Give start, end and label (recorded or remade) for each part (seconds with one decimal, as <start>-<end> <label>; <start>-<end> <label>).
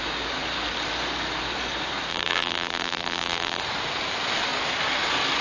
0.0-2.1 recorded; 2.1-3.6 remade; 3.6-5.4 recorded